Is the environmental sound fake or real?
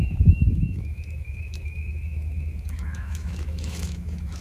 fake